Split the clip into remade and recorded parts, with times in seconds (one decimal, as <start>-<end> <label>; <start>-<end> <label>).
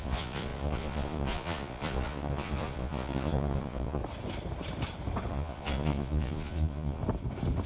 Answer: 0.0-4.0 remade; 4.0-5.3 recorded; 5.3-7.0 remade; 7.0-7.7 recorded